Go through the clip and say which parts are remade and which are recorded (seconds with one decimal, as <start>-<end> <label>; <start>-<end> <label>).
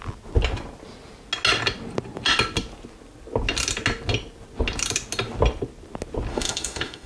0.0-6.3 recorded; 6.3-7.1 remade